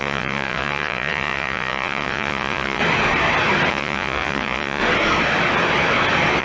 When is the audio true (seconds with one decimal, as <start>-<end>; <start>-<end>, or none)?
2.8-3.7; 4.8-6.4